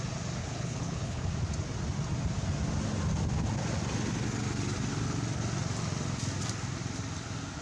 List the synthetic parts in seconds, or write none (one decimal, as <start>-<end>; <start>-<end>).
0.4-1.3